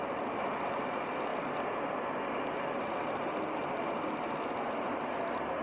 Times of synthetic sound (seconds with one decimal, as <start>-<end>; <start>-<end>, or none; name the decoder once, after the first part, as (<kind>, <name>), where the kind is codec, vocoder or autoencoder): none